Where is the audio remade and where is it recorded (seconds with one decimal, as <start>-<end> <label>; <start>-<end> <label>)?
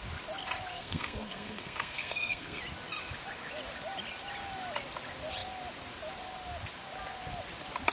0.0-0.7 recorded; 0.7-2.6 remade; 2.6-7.9 recorded